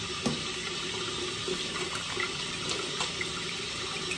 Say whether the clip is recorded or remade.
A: recorded